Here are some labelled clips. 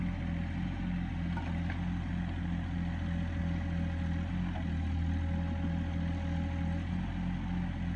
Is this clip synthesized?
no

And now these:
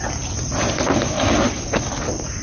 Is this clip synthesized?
no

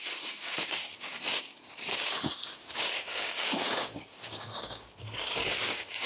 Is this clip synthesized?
yes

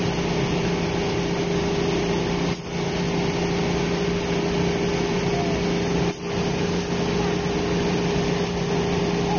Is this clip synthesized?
no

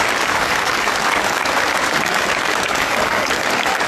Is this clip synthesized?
yes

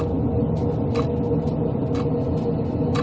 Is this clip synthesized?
no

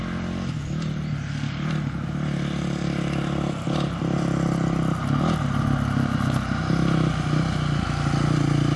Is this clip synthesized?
no